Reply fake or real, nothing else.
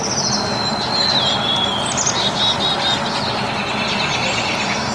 real